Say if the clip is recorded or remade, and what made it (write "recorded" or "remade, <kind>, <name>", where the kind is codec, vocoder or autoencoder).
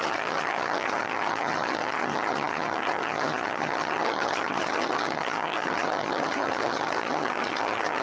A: remade, vocoder, HiFi-GAN